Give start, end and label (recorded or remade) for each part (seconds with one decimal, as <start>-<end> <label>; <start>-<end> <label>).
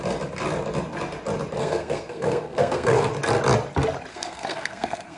0.0-1.6 recorded; 1.6-3.1 remade; 3.1-4.1 recorded; 4.1-5.2 remade